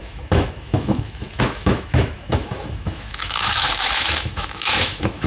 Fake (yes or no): yes